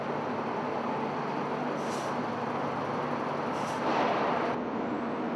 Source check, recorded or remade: recorded